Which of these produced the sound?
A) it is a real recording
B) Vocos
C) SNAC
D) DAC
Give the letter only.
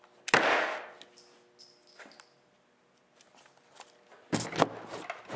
A